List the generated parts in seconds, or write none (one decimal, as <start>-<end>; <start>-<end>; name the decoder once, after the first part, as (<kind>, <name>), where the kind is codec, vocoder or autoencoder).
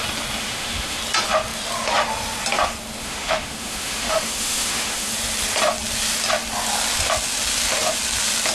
0.4-1.0 (autoencoder, DAC-VAE); 3.0-5.1